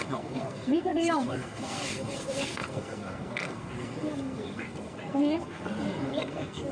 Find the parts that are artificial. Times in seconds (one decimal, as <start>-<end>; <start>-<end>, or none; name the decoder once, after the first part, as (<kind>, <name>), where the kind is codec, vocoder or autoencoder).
0.0-6.7 (codec, SNAC)